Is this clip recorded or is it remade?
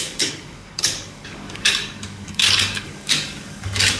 remade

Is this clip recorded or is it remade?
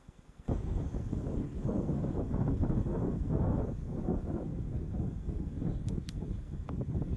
remade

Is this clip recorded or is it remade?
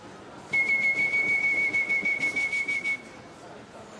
recorded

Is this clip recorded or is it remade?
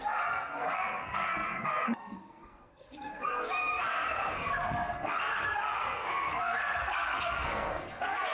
remade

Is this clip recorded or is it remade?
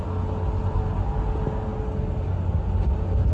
recorded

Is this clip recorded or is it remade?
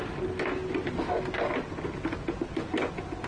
recorded